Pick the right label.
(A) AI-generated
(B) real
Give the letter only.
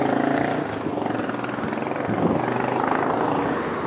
B